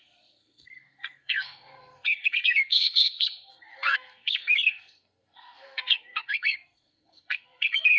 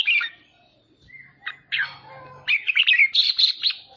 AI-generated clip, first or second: first